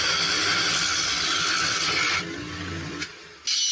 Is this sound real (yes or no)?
yes